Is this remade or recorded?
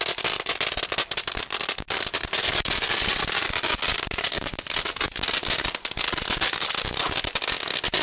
recorded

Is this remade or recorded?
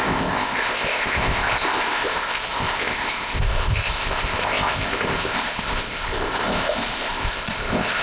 remade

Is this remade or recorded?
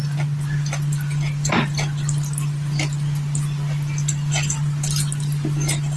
recorded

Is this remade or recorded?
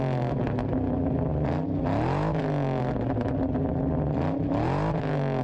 recorded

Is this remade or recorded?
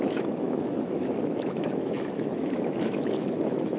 remade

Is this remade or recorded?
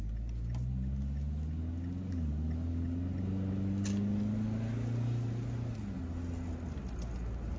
recorded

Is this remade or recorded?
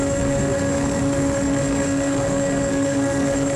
remade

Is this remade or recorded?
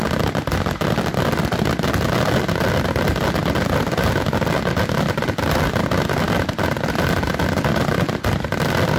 recorded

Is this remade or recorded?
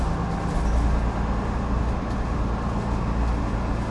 recorded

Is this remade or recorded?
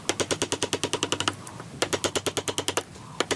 recorded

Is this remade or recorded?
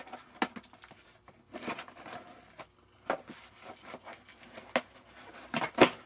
recorded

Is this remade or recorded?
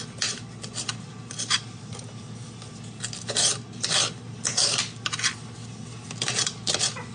recorded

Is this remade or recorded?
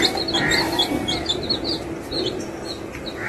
recorded